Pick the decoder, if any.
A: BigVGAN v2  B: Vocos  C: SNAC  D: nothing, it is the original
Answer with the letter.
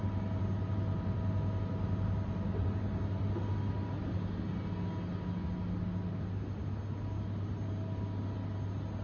D